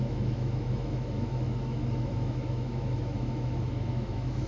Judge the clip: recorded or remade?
remade